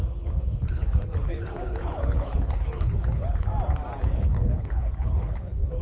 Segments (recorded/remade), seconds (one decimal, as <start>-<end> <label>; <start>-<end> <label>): 0.0-3.5 remade; 3.5-4.0 recorded; 4.0-5.8 remade